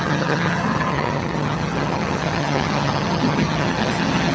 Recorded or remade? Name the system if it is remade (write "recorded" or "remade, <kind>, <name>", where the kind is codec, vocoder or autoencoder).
remade, vocoder, HiFi-GAN